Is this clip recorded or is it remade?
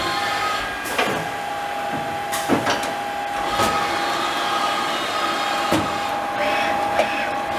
recorded